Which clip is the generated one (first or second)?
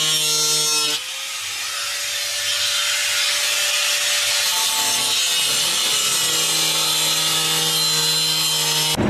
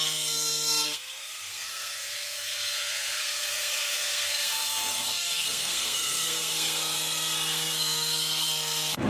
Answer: second